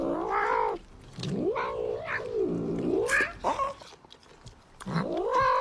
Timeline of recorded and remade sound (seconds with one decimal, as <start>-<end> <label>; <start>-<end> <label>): 0.0-2.7 recorded; 2.7-5.0 remade; 5.0-5.6 recorded